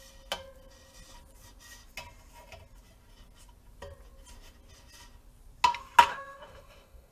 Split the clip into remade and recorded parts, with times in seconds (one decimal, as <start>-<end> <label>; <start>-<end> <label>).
0.0-6.1 recorded; 6.1-7.1 remade